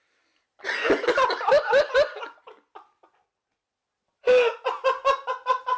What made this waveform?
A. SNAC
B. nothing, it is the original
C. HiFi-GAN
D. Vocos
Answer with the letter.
B